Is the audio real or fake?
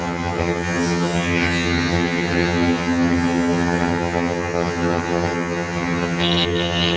fake